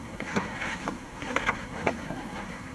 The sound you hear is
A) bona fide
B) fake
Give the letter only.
B